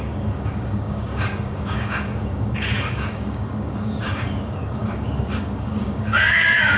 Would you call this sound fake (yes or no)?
yes